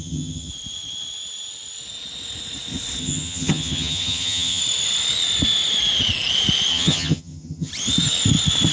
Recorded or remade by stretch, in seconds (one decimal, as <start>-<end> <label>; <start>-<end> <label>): 0.0-0.5 remade; 0.5-3.0 recorded; 3.0-4.6 remade; 4.6-6.7 recorded; 6.7-7.7 remade; 7.7-8.7 recorded